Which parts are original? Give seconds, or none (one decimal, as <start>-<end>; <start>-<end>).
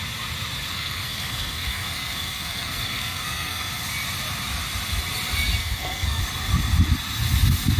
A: 0.0-0.7; 3.7-5.6; 6.2-7.8